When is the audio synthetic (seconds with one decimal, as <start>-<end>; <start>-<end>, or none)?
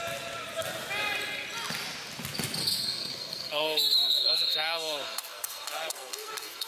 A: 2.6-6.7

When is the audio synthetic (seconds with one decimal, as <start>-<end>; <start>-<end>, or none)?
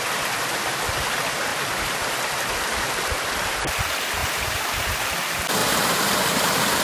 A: 1.5-2.1; 4.2-5.0; 5.6-6.8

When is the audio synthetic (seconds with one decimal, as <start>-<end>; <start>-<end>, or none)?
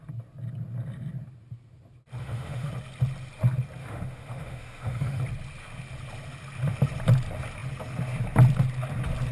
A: 2.2-2.7; 3.8-5.2